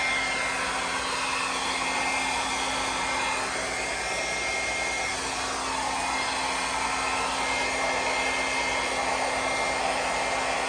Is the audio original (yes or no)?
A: yes